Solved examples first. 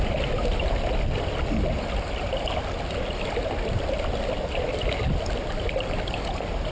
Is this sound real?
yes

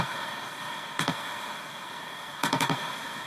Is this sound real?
no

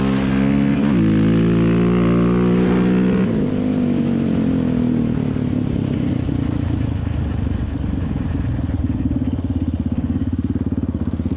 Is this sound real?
yes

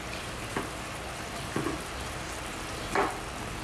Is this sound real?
yes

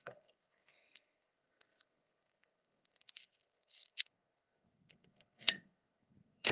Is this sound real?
no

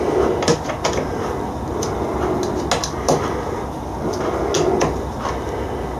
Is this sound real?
yes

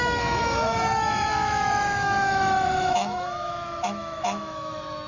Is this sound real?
no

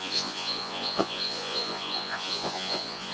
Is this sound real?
no